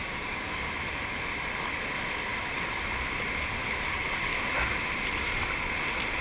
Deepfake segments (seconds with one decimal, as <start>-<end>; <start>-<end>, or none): 0.0-0.7